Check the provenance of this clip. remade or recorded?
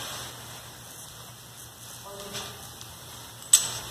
recorded